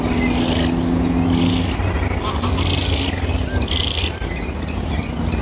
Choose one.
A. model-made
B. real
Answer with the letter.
B